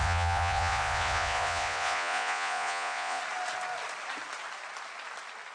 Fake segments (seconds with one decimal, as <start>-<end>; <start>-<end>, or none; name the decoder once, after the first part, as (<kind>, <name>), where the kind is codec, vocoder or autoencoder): 0.0-3.2 (vocoder, Vocos)